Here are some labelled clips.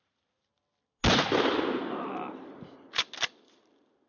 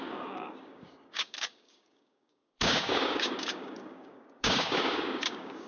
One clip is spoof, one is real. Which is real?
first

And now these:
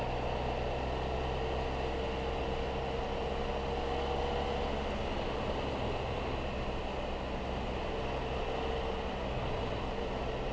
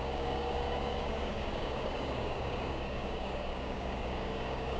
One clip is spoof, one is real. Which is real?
first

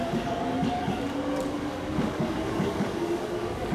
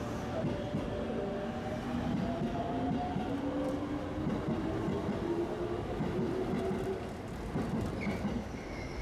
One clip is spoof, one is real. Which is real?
second